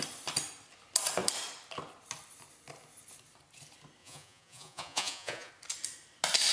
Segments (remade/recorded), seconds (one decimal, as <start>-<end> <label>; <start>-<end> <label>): 0.0-4.0 recorded; 4.0-5.5 remade; 5.5-6.5 recorded